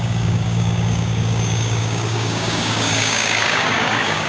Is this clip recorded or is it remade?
remade